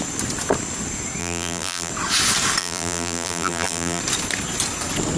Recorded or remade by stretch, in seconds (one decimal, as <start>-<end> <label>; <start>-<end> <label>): 0.0-1.2 recorded; 1.2-1.9 remade; 1.9-2.6 recorded; 2.6-4.0 remade; 4.0-5.2 recorded